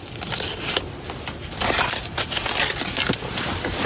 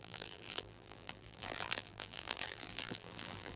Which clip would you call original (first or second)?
first